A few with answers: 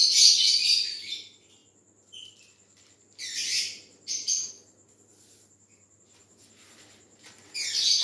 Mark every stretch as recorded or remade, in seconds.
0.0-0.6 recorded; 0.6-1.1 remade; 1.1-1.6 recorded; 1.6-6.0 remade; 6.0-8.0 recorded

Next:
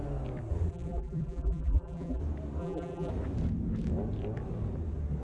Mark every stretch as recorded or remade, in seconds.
0.0-0.7 recorded; 0.7-2.2 remade; 2.2-2.6 recorded; 2.6-3.1 remade; 3.1-5.2 recorded

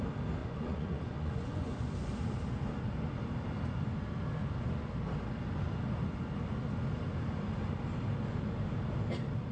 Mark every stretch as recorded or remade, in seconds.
0.0-0.4 recorded; 0.4-1.9 remade; 1.9-9.5 recorded

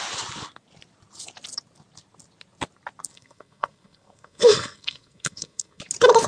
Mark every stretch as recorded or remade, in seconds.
0.0-3.1 recorded; 3.1-5.8 remade; 5.8-6.3 recorded

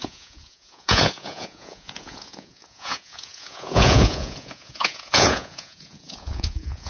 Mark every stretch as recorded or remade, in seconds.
0.0-6.9 remade

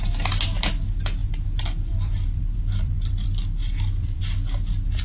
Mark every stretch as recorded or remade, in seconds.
0.0-1.2 recorded; 1.2-4.2 remade; 4.2-5.0 recorded